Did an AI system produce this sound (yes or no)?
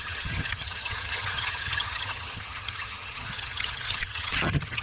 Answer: yes